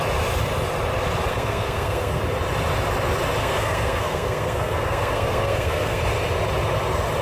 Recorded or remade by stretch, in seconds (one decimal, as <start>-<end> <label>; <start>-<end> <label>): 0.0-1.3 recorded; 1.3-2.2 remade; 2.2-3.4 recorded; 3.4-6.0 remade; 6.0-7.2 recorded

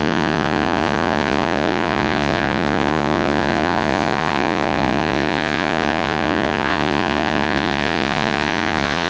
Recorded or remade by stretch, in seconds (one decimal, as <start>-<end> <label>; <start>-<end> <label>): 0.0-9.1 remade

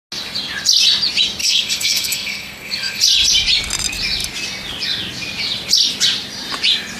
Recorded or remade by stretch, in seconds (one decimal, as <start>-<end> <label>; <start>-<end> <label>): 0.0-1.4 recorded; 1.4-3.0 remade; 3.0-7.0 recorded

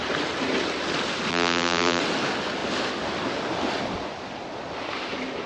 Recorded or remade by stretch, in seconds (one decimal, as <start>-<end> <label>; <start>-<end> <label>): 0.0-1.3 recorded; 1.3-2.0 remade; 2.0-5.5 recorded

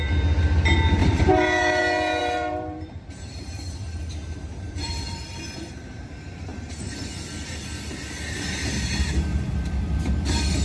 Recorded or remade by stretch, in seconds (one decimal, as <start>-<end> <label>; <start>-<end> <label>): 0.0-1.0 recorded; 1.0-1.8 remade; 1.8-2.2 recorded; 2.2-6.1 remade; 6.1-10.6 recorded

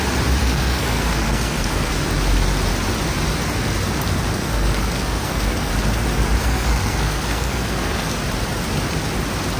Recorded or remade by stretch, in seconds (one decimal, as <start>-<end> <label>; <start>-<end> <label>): 0.0-0.4 recorded; 0.4-1.9 remade; 1.9-4.4 recorded; 4.4-5.7 remade; 5.7-6.4 recorded; 6.4-8.1 remade; 8.1-9.6 recorded